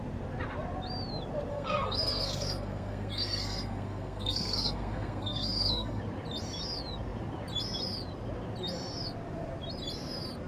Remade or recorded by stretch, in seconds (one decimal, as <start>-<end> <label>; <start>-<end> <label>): 0.0-1.5 recorded; 1.5-6.0 remade; 6.0-10.5 recorded

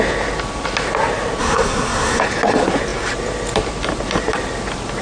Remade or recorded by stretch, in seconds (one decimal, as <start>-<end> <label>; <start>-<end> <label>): 0.0-1.4 recorded; 1.4-2.2 remade; 2.2-5.0 recorded

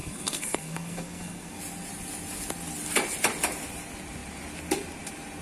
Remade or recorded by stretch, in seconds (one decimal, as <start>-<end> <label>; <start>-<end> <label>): 0.0-1.6 remade; 1.6-5.4 recorded

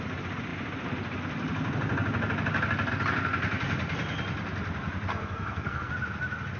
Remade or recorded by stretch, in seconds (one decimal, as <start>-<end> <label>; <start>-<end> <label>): 0.0-5.1 recorded; 5.1-5.9 remade; 5.9-6.6 recorded

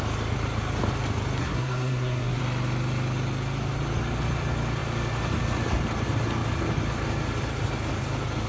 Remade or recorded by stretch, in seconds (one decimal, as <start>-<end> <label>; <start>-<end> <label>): 0.0-1.4 recorded; 1.4-2.4 remade; 2.4-8.5 recorded

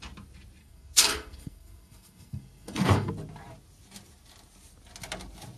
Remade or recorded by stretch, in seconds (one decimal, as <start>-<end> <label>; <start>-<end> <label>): 0.0-0.6 recorded; 0.6-3.1 remade; 3.1-5.6 recorded

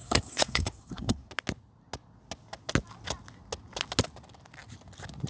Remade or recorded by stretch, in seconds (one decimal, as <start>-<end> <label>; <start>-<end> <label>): 0.0-1.3 remade; 1.3-5.3 recorded